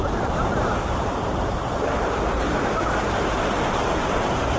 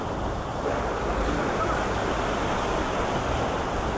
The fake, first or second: first